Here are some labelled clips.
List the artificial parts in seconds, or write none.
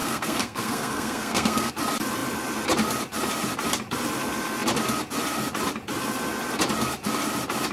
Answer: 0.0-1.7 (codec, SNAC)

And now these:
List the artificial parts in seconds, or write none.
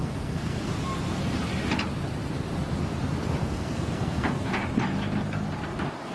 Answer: 0.0-0.7 (codec, SNAC); 3.4-4.5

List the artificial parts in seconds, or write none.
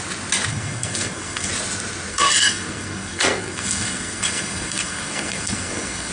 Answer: 0.5-1.5 (codec, SNAC); 2.1-6.1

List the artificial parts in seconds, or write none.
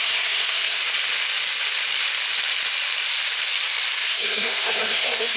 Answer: 0.0-0.8 (codec, SNAC); 4.0-5.4